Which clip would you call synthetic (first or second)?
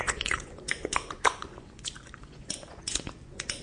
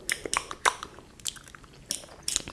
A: first